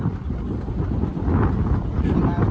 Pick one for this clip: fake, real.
real